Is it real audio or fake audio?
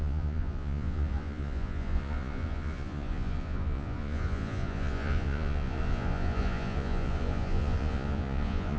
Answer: fake